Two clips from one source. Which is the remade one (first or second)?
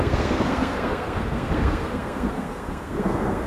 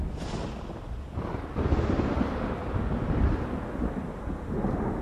first